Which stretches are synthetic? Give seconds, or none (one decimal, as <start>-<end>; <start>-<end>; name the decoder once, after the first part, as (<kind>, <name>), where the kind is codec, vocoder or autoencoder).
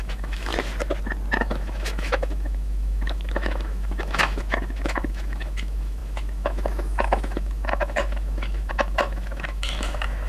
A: 0.0-0.5 (autoencoder, DAC-VAE); 1.4-10.3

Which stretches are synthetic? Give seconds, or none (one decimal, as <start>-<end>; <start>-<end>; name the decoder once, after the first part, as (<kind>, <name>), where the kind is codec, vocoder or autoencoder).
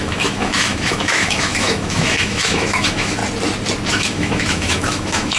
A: 0.0-3.2 (autoencoder, DAC-VAE); 3.9-5.4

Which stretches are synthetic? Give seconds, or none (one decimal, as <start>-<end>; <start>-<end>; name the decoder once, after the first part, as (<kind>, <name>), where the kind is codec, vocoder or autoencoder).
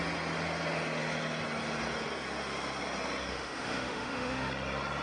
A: 3.3-4.5 (autoencoder, DAC-VAE)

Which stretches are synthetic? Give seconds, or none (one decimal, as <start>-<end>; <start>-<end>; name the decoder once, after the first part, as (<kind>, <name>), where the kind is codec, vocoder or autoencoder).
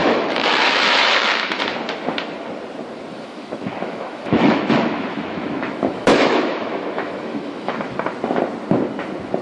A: 0.0-1.6 (autoencoder, DAC-VAE); 3.1-7.8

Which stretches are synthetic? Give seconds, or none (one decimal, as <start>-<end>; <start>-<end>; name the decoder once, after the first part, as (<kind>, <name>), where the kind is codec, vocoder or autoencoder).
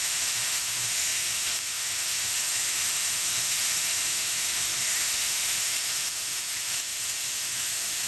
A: 0.0-8.1 (autoencoder, DAC-VAE)